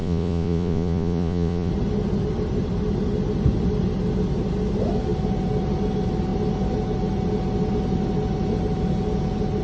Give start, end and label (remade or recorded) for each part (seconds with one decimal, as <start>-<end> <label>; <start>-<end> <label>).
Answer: 0.0-1.7 remade; 1.7-9.6 recorded